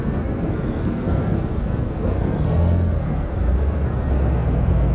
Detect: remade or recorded remade